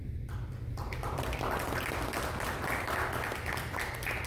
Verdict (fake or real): real